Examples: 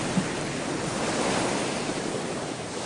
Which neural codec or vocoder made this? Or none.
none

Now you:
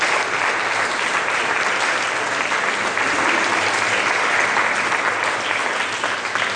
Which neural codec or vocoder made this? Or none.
none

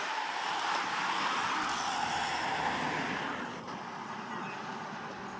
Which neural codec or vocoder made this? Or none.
none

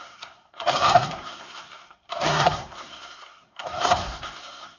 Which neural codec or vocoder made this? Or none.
codec, SNAC